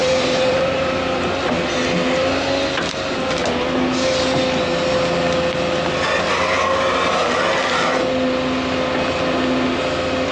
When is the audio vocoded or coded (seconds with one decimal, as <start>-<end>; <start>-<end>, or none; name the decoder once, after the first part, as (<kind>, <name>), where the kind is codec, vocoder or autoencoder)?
0.0-1.3 (vocoder, BigVGAN v2)